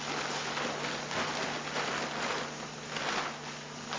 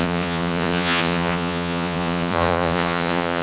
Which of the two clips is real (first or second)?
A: first